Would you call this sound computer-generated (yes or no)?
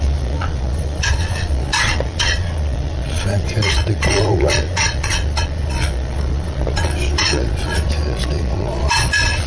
yes